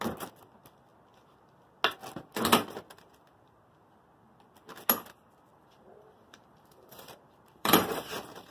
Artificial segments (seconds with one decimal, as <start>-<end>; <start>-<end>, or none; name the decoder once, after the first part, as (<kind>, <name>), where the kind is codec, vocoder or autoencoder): 5.5-8.1 (vocoder, BigVGAN v2)